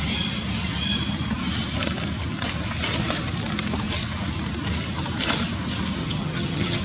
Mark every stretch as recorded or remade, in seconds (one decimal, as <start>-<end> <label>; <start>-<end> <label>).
0.0-6.0 recorded; 6.0-6.8 remade